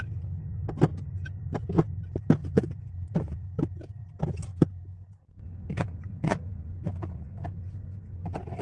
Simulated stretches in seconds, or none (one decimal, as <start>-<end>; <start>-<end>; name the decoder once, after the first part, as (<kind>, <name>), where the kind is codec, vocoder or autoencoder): 0.9-1.4 (vocoder, Vocos); 2.4-3.4; 4.5-8.6